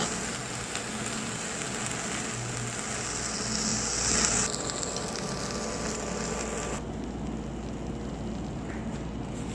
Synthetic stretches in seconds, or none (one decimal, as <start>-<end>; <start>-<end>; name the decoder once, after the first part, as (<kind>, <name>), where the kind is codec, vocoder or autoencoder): none